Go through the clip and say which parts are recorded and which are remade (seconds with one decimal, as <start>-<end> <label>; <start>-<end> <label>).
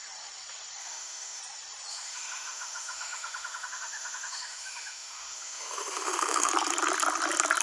0.0-0.8 recorded; 0.8-1.4 remade; 1.4-1.9 recorded; 1.9-6.5 remade; 6.5-7.6 recorded